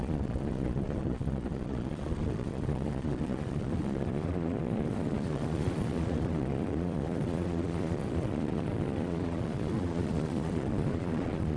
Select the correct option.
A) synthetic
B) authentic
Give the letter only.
A